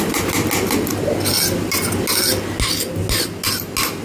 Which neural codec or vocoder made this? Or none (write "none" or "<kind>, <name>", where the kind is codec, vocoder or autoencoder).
none